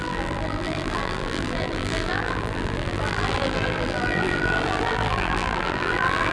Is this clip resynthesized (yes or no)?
yes